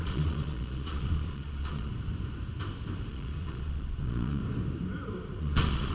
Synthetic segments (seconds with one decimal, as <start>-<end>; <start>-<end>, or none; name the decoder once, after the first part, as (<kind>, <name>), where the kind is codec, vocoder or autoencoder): 0.0-1.9 (vocoder, Vocos); 3.1-4.4; 5.4-5.9